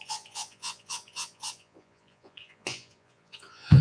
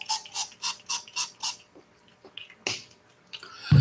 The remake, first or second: first